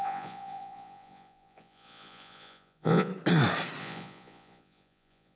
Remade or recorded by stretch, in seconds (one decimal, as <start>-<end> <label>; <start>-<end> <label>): 0.0-3.1 remade; 3.1-3.8 recorded; 3.8-5.4 remade